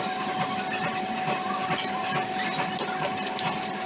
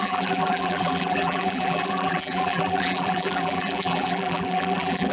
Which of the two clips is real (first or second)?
first